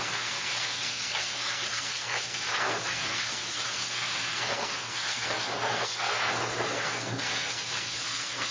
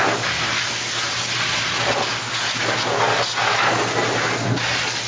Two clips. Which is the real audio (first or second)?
second